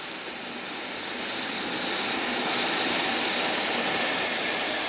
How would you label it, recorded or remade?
recorded